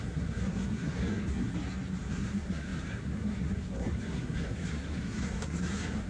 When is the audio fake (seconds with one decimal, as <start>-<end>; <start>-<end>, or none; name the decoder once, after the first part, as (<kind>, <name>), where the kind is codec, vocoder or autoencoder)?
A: 0.0-1.5 (codec, SNAC); 2.1-6.1